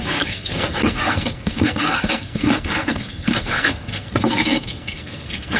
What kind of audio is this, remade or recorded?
remade